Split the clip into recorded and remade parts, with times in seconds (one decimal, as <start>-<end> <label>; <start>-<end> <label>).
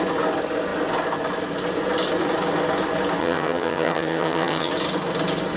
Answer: 0.0-3.2 recorded; 3.2-4.7 remade; 4.7-5.6 recorded